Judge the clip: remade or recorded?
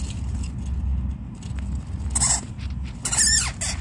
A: recorded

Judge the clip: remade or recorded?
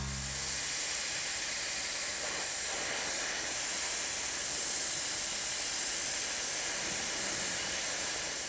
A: recorded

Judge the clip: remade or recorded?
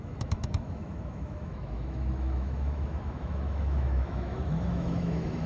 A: remade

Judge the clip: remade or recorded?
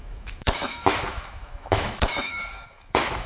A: remade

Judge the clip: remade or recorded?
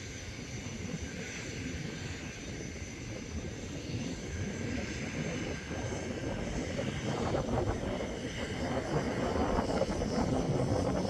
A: recorded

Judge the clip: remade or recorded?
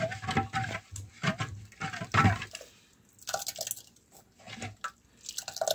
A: recorded